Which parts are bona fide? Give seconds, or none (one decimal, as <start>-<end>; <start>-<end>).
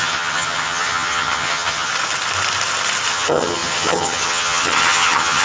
1.9-3.1